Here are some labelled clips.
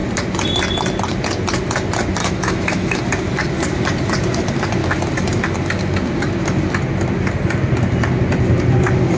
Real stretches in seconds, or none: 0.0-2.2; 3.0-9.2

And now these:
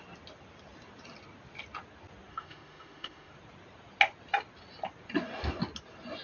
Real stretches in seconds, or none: 0.0-2.3; 3.3-6.2

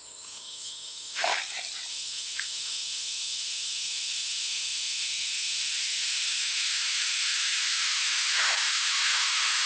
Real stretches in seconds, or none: 1.3-1.9